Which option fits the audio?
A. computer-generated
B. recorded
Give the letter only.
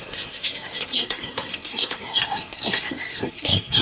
A